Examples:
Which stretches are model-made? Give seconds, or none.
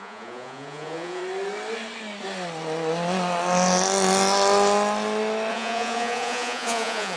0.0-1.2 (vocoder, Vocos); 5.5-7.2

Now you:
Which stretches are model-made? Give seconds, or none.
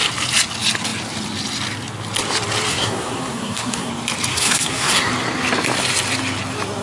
2.7-3.9 (codec, SNAC); 4.3-5.1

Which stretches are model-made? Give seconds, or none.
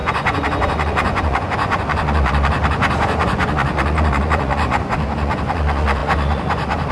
0.0-6.9 (vocoder, Vocos)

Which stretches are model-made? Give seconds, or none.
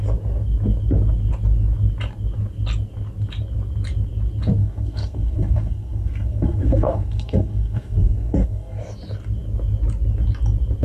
4.6-8.8 (codec, SNAC)